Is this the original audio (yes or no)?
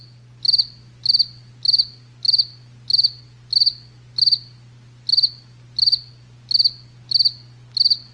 yes